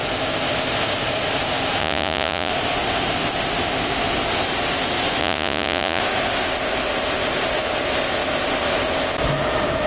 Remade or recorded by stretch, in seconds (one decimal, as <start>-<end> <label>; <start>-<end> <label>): 0.0-1.8 recorded; 1.8-2.5 remade; 2.5-5.2 recorded; 5.2-6.0 remade; 6.0-9.9 recorded